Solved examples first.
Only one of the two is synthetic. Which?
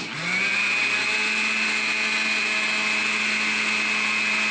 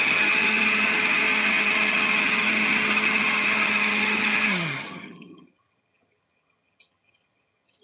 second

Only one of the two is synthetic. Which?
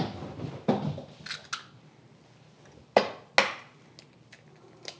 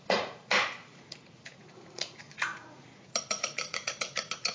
second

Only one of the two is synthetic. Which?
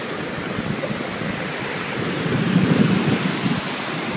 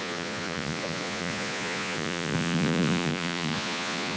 second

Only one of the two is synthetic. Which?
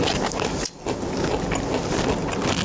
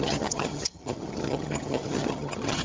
second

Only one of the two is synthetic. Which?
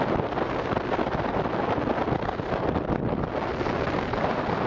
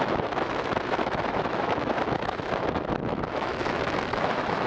second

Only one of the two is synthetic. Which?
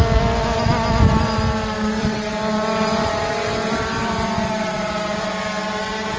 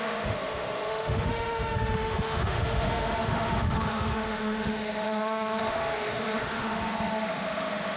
second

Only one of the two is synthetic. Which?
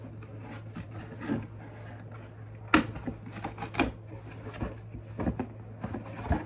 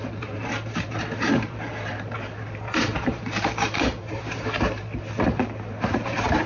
second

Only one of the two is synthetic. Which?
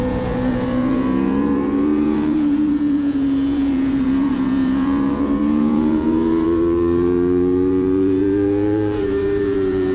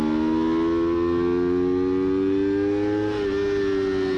first